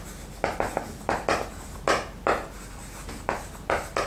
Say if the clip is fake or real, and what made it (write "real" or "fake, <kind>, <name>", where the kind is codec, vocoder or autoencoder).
real